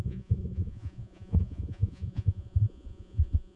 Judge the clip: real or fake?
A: fake